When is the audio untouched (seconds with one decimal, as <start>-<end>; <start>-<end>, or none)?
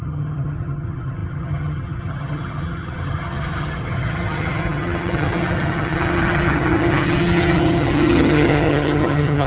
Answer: none